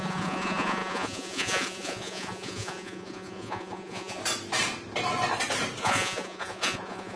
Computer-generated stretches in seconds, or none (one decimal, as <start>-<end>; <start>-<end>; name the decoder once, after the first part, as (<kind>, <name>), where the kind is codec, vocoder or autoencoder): 0.0-4.2 (vocoder, Vocos); 5.8-7.2